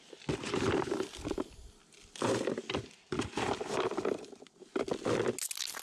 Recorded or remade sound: recorded